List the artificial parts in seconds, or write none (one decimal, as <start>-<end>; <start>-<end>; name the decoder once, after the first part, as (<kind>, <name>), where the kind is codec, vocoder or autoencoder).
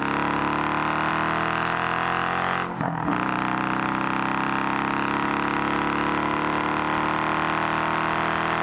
none